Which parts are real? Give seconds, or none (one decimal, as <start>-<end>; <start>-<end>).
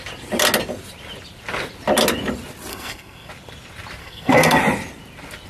0.0-2.7; 3.3-4.0; 4.6-5.5